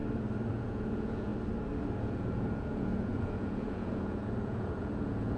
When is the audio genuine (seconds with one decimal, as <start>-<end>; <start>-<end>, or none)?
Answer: 0.0-0.5; 1.3-2.0